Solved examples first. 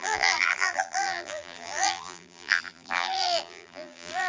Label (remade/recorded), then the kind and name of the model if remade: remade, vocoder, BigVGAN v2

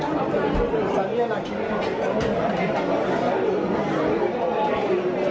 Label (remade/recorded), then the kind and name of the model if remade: recorded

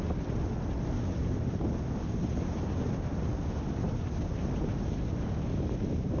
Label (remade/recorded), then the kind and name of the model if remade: recorded